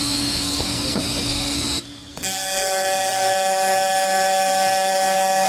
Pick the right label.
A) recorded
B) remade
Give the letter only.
B